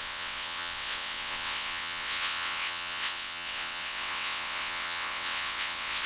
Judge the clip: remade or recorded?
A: remade